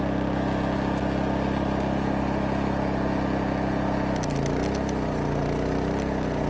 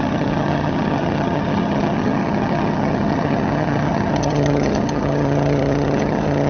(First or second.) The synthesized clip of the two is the second